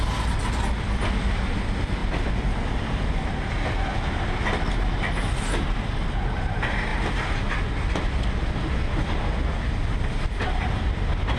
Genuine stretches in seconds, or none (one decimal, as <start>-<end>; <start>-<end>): 0.0-11.4